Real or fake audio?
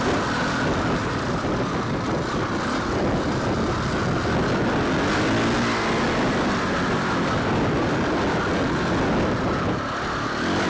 real